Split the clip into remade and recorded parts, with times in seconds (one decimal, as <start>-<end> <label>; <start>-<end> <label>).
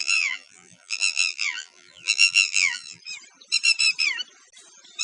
0.0-3.0 remade; 3.0-5.0 recorded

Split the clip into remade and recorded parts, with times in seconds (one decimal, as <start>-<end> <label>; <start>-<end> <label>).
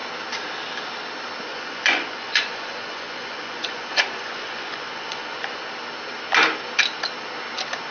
0.0-1.5 recorded; 1.5-5.6 remade; 5.6-7.9 recorded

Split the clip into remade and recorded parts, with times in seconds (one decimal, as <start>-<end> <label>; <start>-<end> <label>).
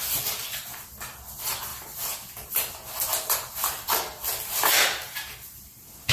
0.0-1.7 recorded; 1.7-2.5 remade; 2.5-6.1 recorded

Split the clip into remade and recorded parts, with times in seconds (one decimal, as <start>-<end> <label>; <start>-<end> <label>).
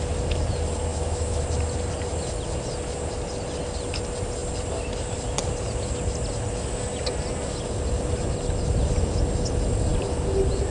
0.0-0.9 recorded; 0.9-1.4 remade; 1.4-10.7 recorded